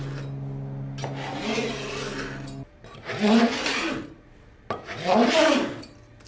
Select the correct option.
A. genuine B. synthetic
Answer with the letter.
A